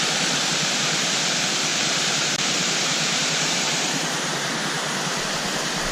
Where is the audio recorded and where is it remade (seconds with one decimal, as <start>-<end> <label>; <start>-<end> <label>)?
0.0-0.5 recorded; 0.5-1.0 remade; 1.0-1.7 recorded; 1.7-5.2 remade; 5.2-5.9 recorded